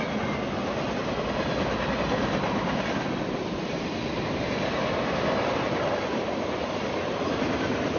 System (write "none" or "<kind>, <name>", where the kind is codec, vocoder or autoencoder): none